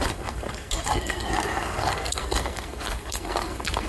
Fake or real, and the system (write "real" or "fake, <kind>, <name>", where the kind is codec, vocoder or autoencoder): fake, codec, SNAC